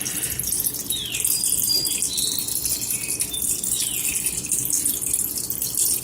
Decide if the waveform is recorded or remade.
recorded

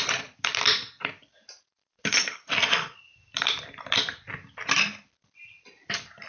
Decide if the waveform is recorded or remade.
remade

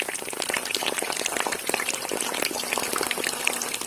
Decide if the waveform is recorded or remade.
recorded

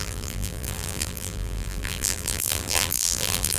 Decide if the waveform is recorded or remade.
remade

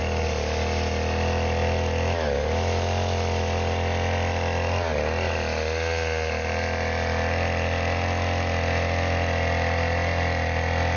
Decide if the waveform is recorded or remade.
recorded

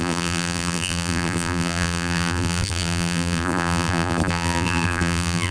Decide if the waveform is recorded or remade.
remade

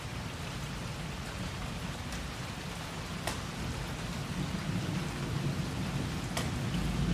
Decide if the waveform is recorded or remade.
recorded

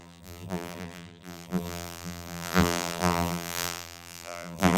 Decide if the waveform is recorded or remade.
remade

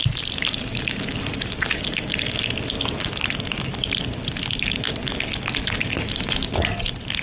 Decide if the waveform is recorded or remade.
recorded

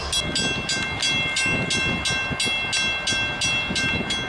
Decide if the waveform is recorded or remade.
recorded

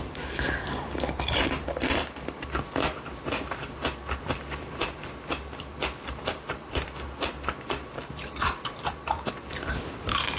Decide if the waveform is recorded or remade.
remade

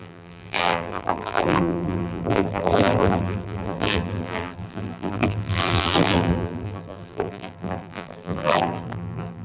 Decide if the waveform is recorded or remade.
remade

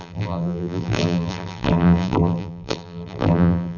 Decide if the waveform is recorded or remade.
remade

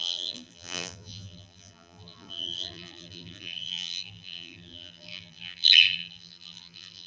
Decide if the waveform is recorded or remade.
remade